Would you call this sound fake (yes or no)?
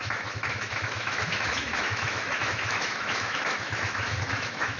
yes